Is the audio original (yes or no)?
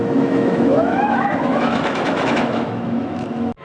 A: no